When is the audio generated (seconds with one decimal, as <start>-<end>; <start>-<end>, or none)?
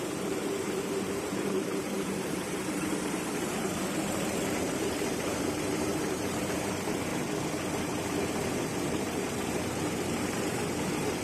0.0-7.1; 8.5-11.2